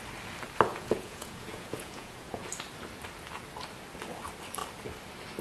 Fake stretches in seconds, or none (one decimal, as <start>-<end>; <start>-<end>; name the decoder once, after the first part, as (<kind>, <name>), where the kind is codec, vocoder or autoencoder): 0.7-2.4 (vocoder, Vocos)